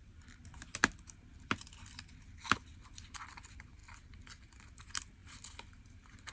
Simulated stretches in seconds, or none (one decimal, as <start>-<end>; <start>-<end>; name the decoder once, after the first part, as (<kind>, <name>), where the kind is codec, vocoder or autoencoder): none